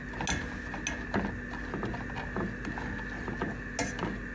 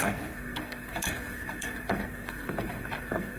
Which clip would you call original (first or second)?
first